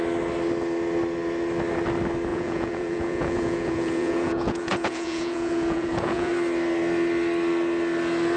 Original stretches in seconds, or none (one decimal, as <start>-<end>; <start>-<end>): 0.0-2.3; 6.3-8.4